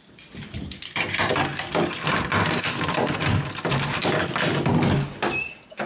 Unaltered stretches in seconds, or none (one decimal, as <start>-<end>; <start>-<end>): 0.0-1.5; 3.5-5.9